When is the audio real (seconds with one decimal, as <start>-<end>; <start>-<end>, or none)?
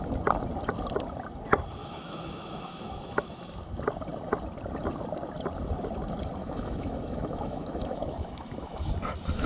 0.0-1.8; 3.4-6.4; 8.9-9.5